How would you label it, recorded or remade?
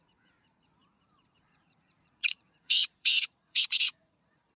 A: remade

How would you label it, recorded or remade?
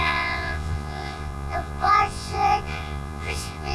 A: remade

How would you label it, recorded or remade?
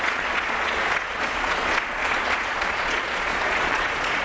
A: remade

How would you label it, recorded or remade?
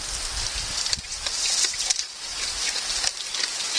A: recorded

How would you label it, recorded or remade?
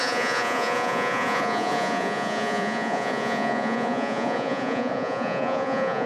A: remade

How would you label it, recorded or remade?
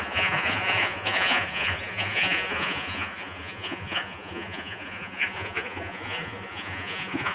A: remade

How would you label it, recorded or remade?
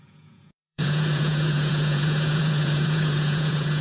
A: remade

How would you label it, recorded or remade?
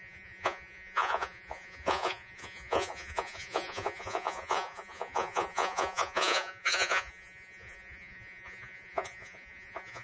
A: remade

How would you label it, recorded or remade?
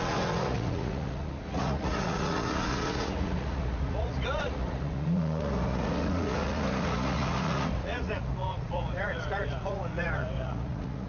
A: remade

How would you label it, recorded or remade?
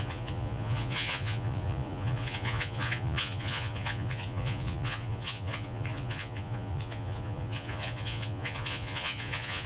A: remade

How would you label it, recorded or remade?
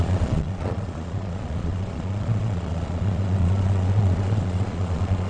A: remade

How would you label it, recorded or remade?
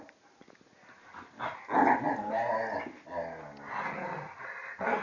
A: recorded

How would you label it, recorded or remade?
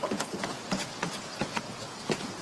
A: remade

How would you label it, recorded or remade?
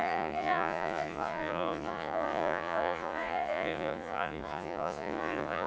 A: remade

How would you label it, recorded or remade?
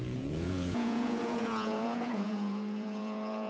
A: remade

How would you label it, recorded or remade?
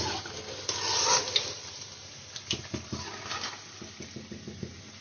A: recorded